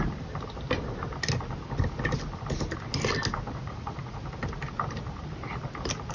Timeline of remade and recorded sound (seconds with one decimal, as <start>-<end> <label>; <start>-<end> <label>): 0.0-3.6 recorded; 3.6-4.2 remade; 4.2-6.1 recorded